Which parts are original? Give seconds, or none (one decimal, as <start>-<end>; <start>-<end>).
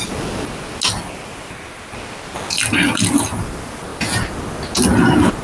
0.0-5.4